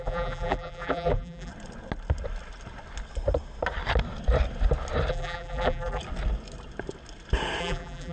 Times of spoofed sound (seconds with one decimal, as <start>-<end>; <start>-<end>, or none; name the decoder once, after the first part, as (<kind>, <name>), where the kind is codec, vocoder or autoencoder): 0.0-1.5 (vocoder, BigVGAN v2); 5.1-6.0; 7.6-8.1